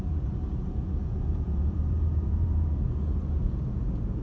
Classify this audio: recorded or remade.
remade